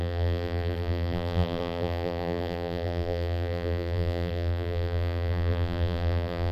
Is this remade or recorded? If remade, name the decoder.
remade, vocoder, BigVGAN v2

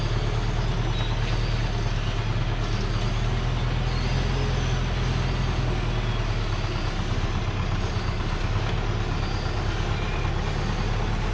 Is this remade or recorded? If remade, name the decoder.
recorded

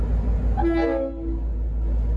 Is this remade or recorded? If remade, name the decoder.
recorded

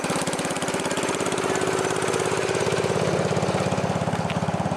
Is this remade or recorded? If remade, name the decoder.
recorded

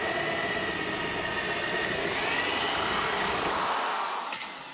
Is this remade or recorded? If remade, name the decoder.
recorded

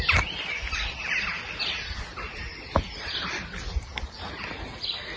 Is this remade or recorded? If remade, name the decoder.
recorded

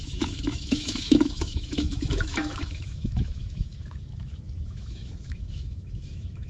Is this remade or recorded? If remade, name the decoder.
remade, autoencoder, DAC-VAE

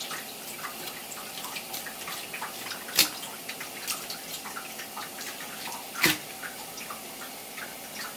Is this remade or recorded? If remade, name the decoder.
remade, vocoder, BigVGAN v2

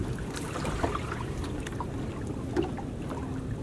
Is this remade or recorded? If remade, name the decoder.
recorded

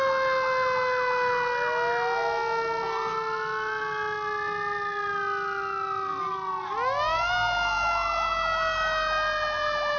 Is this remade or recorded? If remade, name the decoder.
recorded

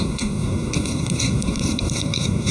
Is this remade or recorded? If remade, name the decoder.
remade, codec, SNAC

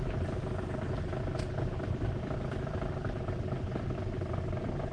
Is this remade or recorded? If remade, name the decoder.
recorded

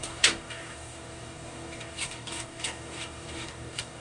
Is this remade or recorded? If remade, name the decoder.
remade, codec, DAC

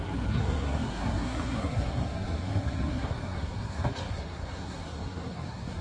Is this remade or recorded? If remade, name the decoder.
remade, codec, SNAC